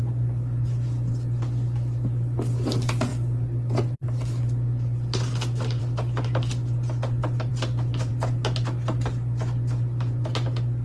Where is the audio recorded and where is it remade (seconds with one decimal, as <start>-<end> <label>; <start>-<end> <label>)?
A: 0.0-10.8 recorded